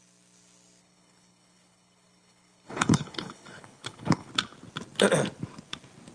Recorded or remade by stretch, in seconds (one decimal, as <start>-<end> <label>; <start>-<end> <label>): 0.0-0.8 recorded; 0.8-4.3 remade; 4.3-6.1 recorded